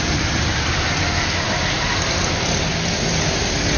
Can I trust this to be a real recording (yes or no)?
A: yes